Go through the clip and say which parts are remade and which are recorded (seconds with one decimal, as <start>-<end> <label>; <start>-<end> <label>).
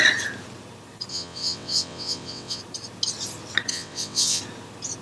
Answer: 0.0-1.1 recorded; 1.1-2.6 remade; 2.6-3.7 recorded; 3.7-4.4 remade; 4.4-5.0 recorded